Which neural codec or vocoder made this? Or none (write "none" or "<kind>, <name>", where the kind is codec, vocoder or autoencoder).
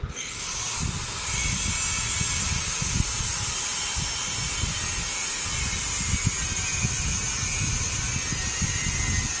none